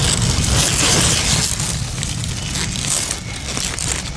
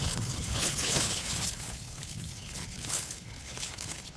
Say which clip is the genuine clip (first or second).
first